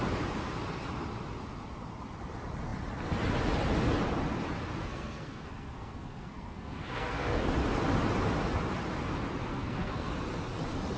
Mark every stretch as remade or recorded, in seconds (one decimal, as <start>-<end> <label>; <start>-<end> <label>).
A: 0.0-4.8 recorded; 4.8-7.5 remade; 7.5-9.5 recorded; 9.5-10.1 remade; 10.1-11.0 recorded